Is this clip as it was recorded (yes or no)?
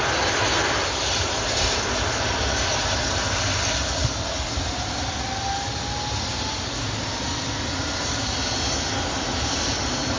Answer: yes